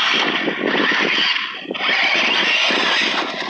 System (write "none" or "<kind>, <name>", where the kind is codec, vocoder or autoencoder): none